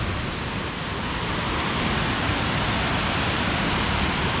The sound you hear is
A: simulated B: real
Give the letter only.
B